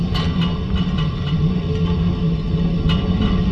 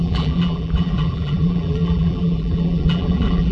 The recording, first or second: first